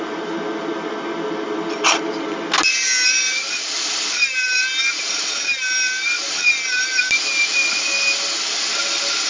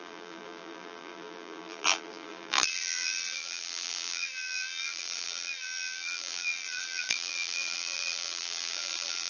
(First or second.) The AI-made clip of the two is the second